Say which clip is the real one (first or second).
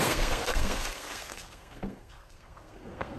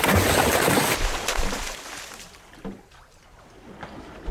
second